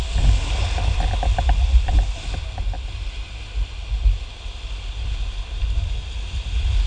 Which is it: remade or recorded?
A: recorded